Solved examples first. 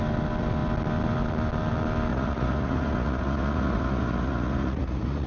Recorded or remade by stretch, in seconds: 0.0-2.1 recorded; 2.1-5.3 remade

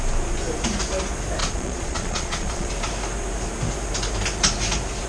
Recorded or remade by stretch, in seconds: 0.0-1.4 recorded; 1.4-2.7 remade; 2.7-5.1 recorded

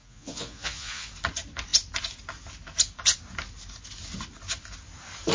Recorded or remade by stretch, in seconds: 0.0-1.1 remade; 1.1-5.3 recorded

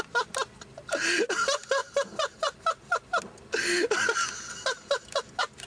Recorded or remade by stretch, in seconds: 0.0-5.7 recorded